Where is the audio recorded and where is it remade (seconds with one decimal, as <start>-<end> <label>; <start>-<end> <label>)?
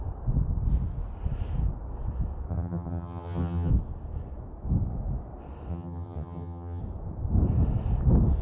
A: 0.0-2.5 recorded; 2.5-3.7 remade; 3.7-5.7 recorded; 5.7-6.8 remade; 6.8-8.4 recorded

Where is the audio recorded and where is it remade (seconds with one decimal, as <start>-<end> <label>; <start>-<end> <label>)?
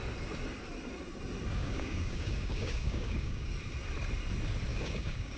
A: 0.0-1.6 recorded; 1.6-3.5 remade; 3.5-4.7 recorded; 4.7-5.4 remade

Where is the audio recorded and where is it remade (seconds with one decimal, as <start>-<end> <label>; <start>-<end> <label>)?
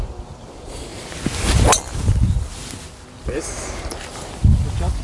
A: 0.0-5.0 recorded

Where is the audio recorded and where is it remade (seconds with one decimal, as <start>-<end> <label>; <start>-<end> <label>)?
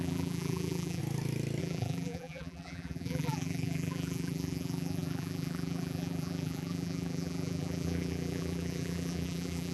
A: 0.0-1.0 remade; 1.0-1.6 recorded; 1.6-9.7 remade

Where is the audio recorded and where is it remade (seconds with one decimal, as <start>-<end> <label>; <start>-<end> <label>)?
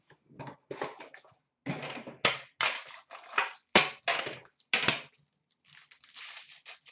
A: 0.0-6.9 recorded